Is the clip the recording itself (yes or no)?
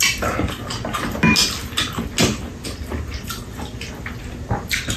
yes